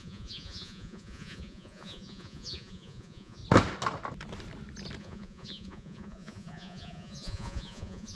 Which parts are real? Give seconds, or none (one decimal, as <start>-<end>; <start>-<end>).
3.4-5.0